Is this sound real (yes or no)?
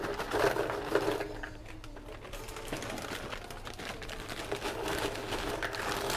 yes